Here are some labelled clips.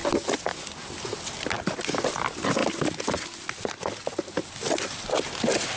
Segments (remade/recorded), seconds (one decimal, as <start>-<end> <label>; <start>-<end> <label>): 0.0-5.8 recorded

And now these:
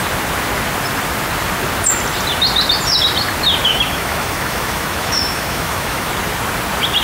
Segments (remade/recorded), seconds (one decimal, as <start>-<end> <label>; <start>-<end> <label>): 0.0-3.7 recorded; 3.7-6.1 remade; 6.1-7.0 recorded

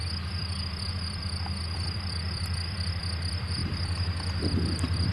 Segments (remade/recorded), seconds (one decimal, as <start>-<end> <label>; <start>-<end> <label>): 0.0-5.1 remade